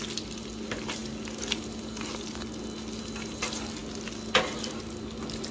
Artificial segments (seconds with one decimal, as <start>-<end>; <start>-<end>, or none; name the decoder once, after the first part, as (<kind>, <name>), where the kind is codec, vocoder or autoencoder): none